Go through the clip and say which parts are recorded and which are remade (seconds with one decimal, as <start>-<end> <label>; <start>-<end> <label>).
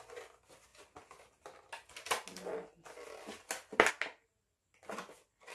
0.0-5.5 recorded